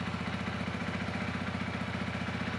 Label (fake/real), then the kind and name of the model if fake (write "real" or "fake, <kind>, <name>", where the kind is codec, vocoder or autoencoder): real